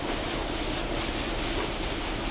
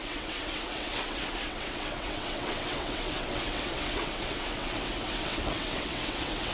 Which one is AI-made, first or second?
second